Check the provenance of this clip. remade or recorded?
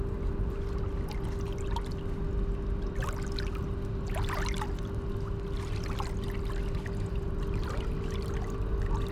recorded